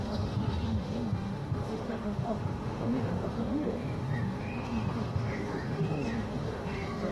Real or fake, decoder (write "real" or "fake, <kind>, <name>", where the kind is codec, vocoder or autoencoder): fake, autoencoder, DAC-VAE